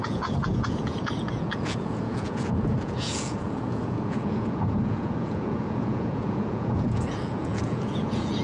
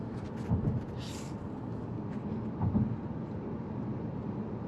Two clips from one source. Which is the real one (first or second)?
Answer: second